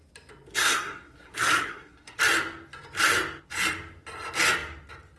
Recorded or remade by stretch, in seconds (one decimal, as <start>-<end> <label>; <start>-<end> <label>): 0.0-0.5 recorded; 0.5-2.2 remade; 2.2-5.2 recorded